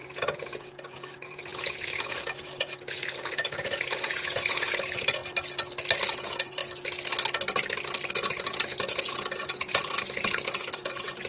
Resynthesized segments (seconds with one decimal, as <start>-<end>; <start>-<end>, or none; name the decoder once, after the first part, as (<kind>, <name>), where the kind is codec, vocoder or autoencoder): 0.0-5.2 (vocoder, Vocos); 6.0-6.6; 8.1-11.3